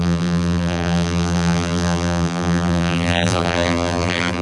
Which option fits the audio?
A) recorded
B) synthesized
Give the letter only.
B